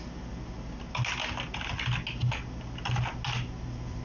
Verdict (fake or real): real